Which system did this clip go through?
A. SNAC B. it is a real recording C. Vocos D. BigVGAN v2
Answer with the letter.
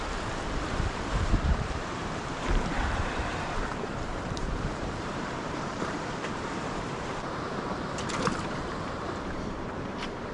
D